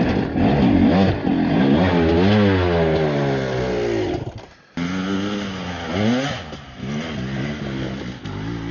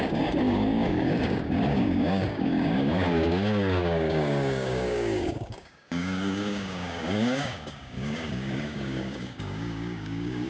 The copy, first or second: second